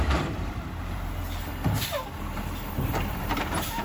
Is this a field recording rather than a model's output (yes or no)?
no